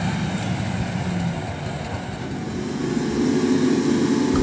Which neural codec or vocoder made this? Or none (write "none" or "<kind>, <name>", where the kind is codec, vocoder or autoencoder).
none